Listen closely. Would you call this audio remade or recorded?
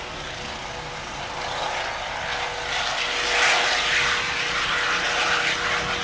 recorded